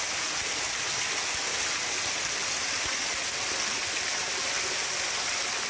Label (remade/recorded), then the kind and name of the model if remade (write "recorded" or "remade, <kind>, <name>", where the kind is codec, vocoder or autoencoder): recorded